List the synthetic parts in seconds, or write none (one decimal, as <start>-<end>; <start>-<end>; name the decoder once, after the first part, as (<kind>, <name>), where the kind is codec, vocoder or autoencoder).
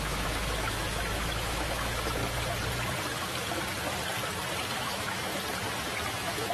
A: 0.0-2.2 (autoencoder, DAC-VAE); 4.8-5.3; 6.1-6.5